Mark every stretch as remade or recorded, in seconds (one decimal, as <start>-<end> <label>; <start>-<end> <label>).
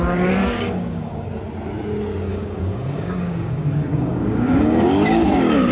0.0-0.4 recorded; 0.4-1.3 remade; 1.3-2.3 recorded; 2.3-5.7 remade